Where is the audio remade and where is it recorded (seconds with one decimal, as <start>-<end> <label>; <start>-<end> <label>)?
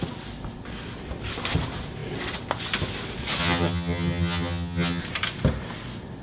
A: 0.0-3.4 recorded; 3.4-5.0 remade; 5.0-6.2 recorded